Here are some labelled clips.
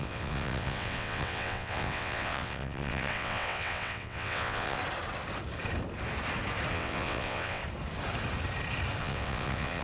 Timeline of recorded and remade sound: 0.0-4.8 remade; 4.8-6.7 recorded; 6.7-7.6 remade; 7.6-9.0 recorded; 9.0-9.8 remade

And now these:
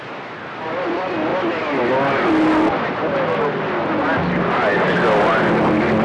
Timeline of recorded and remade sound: 0.0-6.0 recorded

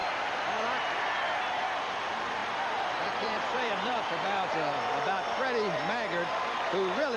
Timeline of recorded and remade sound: 0.0-1.2 remade; 1.2-2.4 recorded; 2.4-4.5 remade; 4.5-7.2 recorded

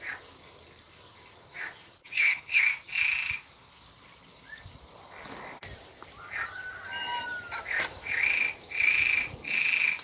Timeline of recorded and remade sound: 0.0-2.0 recorded; 2.0-2.6 remade; 2.6-10.0 recorded

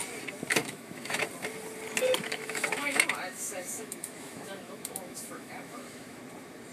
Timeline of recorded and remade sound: 0.0-0.6 recorded; 0.6-1.2 remade; 1.2-2.2 recorded; 2.2-6.2 remade; 6.2-6.7 recorded

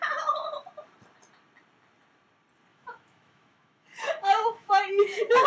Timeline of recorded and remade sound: 0.0-2.7 recorded; 2.7-5.5 remade